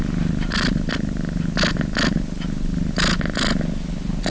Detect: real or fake real